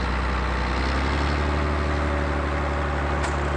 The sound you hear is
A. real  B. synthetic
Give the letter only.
A